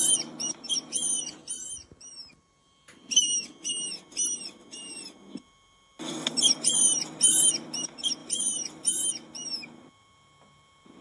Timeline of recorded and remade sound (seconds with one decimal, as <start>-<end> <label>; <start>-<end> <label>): 0.0-8.2 recorded; 8.2-8.9 remade; 8.9-11.0 recorded